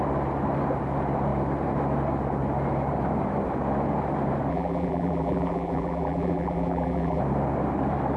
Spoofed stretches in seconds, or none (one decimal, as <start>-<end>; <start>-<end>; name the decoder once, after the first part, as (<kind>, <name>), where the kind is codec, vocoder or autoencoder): 4.5-7.2 (vocoder, BigVGAN v2)